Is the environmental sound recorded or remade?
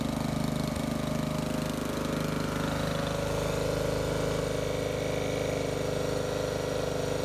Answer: recorded